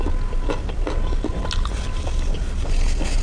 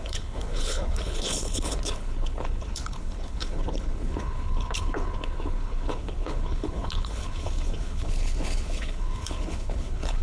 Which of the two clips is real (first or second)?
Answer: first